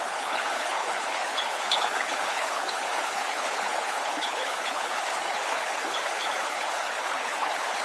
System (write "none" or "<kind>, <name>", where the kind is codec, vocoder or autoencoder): codec, HILCodec